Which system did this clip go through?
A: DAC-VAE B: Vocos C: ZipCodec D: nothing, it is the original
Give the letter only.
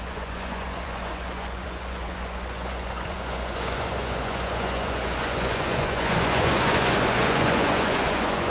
B